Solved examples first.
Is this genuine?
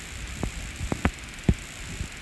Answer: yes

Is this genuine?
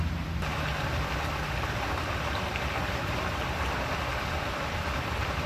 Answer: yes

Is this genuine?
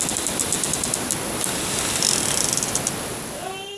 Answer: yes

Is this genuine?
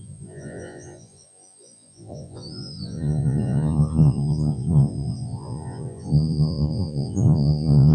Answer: no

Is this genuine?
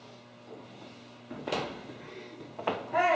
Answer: yes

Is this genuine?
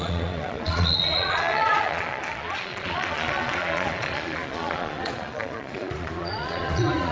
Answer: no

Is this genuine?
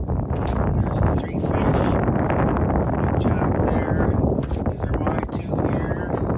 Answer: yes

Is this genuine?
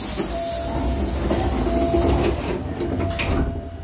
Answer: yes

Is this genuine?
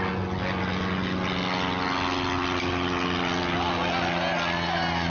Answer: yes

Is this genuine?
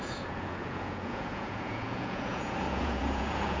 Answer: no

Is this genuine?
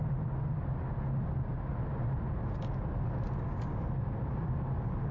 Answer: yes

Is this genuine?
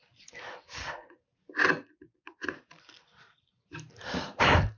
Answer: yes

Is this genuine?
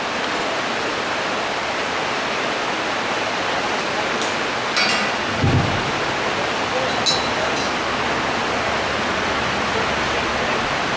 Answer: yes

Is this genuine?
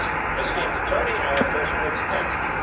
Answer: yes